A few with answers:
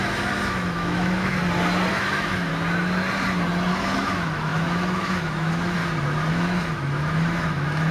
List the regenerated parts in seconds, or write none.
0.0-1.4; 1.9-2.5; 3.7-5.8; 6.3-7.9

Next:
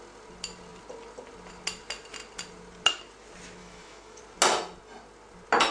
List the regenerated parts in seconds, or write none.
3.6-4.2

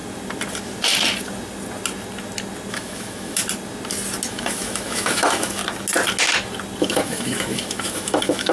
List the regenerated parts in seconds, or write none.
2.7-3.4; 4.3-5.6; 6.8-8.5